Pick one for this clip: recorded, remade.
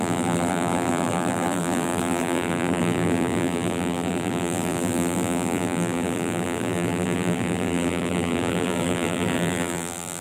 remade